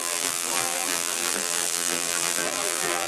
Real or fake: fake